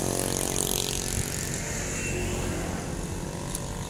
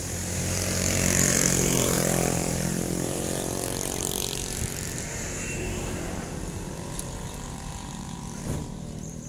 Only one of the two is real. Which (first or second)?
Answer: first